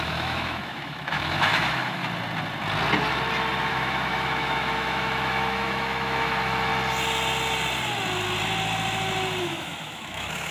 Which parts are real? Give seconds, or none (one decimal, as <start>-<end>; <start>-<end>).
2.0-3.7; 6.7-9.4